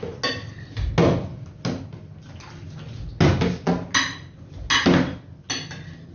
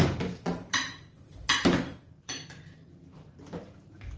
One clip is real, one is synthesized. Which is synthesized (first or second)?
second